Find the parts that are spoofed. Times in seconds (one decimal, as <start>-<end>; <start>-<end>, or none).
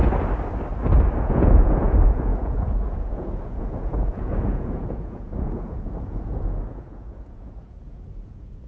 1.2-8.7